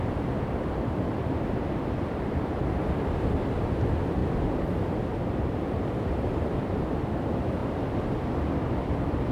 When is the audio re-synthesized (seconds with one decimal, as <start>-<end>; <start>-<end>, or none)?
0.0-4.2; 4.8-9.3